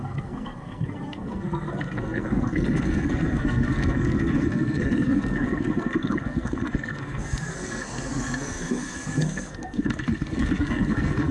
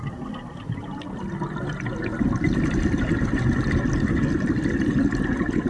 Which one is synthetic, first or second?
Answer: first